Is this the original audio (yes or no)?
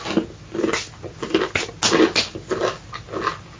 yes